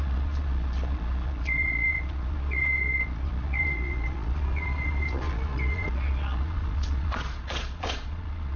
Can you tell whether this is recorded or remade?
remade